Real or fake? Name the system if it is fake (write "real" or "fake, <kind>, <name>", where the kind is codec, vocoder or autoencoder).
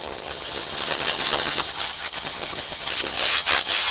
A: fake, vocoder, HiFi-GAN